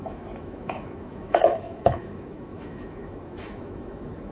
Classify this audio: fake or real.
fake